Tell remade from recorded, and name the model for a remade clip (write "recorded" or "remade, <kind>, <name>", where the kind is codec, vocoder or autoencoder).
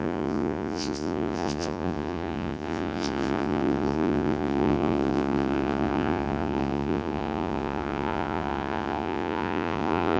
remade, vocoder, Vocos